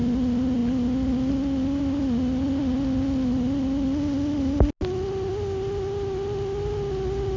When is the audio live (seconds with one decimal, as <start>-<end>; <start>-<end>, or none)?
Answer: 0.0-7.4